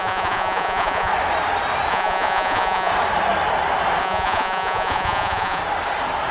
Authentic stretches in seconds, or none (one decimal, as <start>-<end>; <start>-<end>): 1.1-1.9; 2.9-4.0; 5.6-6.3